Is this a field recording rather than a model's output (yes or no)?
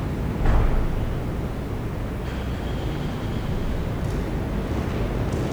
yes